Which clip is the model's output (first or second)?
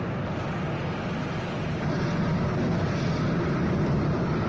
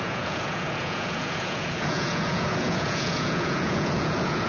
second